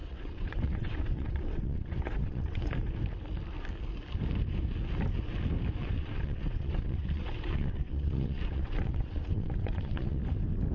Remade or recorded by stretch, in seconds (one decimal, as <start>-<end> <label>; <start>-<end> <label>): 0.0-2.7 remade; 2.7-5.8 recorded; 5.8-10.2 remade; 10.2-10.7 recorded